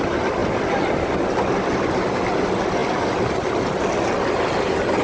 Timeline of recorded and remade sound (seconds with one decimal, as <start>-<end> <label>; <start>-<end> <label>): 0.0-5.0 recorded